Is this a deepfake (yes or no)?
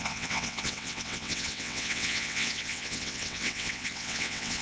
yes